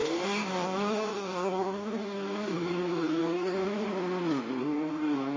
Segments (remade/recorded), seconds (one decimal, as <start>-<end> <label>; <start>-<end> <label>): 0.0-3.9 remade; 3.9-4.6 recorded; 4.6-5.4 remade